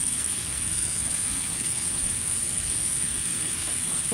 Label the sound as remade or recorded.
remade